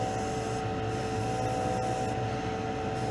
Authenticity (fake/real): real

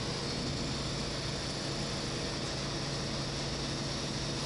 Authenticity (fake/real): real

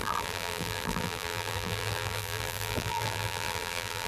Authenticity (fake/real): fake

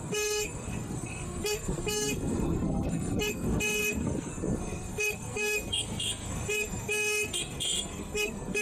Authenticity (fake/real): fake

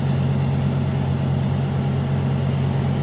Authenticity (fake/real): real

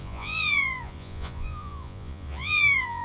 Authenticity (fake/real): fake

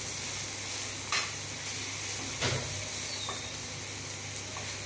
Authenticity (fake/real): real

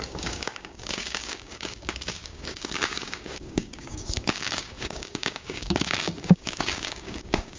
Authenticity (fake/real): fake